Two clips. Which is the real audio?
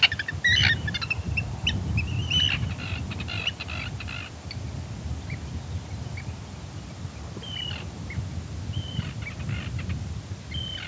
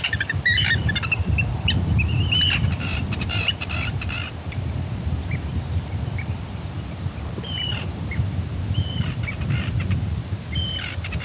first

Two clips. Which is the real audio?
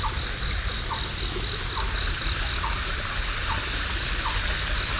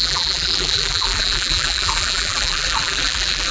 first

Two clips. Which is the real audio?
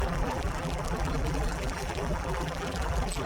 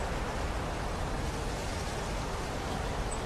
second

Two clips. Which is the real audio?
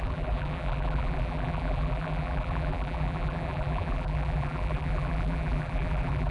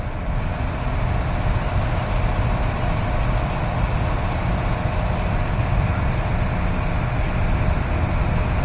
second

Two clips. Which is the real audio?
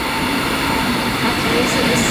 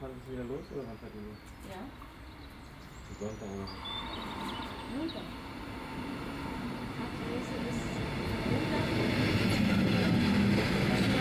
second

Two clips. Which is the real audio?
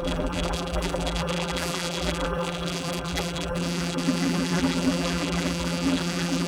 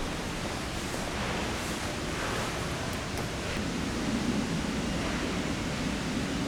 second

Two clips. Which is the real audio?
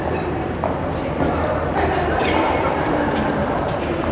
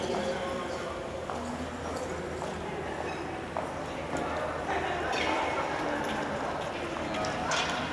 second